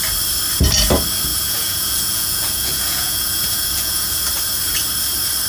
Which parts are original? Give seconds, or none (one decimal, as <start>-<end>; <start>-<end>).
0.0-1.3; 4.2-5.5